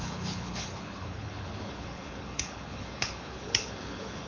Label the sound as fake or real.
fake